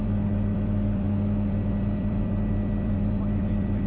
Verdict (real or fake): fake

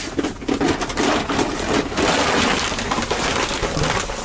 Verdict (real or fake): real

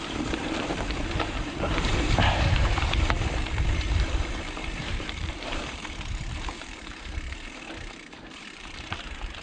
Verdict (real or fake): fake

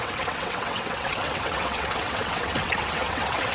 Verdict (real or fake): fake